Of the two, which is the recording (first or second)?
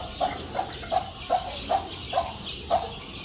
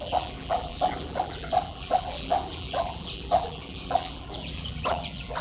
first